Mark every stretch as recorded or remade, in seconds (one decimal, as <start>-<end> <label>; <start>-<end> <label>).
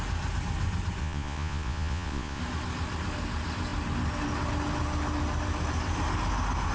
0.0-1.0 recorded; 1.0-2.4 remade; 2.4-6.7 recorded